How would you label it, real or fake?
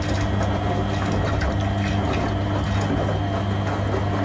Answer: real